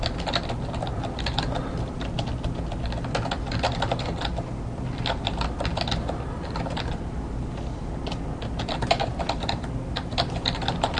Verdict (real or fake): real